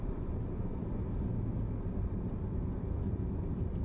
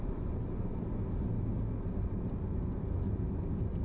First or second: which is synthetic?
first